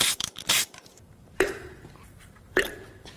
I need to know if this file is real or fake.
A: fake